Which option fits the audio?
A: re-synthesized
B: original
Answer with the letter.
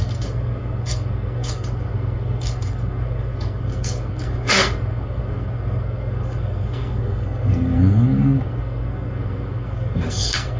A